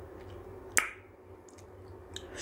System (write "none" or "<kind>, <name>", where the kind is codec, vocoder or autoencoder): none